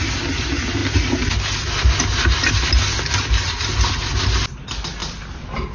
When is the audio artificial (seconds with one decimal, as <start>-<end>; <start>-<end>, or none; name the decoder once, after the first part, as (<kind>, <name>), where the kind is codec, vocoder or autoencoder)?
none